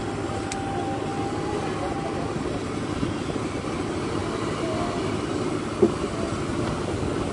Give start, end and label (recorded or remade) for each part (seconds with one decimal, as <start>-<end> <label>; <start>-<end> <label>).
0.0-7.3 recorded

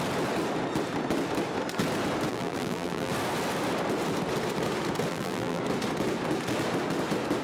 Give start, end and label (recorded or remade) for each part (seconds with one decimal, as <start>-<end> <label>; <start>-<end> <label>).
0.0-2.3 recorded; 2.3-3.1 remade; 3.1-5.1 recorded; 5.1-5.6 remade; 5.6-7.4 recorded

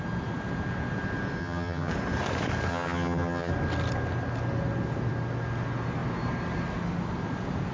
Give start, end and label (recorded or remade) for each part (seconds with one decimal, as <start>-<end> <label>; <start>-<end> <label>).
0.0-1.4 recorded; 1.4-1.9 remade; 1.9-2.7 recorded; 2.7-3.5 remade; 3.5-7.7 recorded

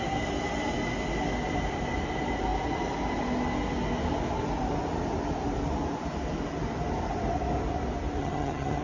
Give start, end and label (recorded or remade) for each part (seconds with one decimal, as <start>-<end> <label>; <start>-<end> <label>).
0.0-8.2 recorded; 8.2-8.8 remade

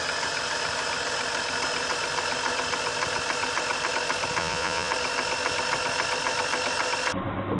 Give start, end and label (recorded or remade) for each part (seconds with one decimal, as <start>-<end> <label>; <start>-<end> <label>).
0.0-4.4 recorded; 4.4-4.9 remade; 4.9-7.6 recorded

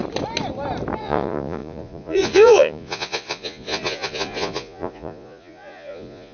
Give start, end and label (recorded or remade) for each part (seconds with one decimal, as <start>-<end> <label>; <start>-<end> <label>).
0.0-1.0 recorded; 1.0-6.3 remade